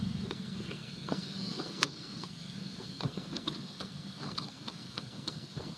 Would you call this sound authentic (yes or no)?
no